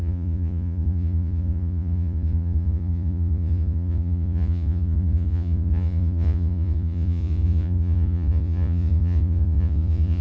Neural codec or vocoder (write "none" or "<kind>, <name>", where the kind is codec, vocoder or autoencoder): vocoder, Vocos